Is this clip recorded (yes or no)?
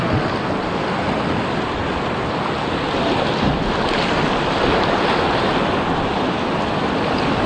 yes